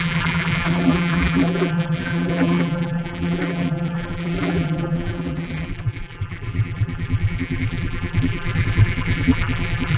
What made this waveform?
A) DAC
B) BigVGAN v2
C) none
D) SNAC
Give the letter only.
B